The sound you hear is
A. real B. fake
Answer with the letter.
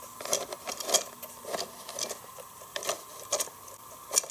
A